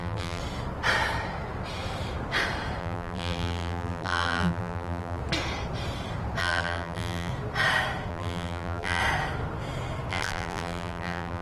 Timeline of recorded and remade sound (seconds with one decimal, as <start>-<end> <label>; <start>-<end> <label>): 0.0-0.4 remade; 0.4-2.8 recorded; 2.8-5.2 remade; 5.2-6.4 recorded; 6.4-7.3 remade; 7.3-8.1 recorded; 8.1-9.0 remade; 9.0-10.1 recorded; 10.1-11.4 remade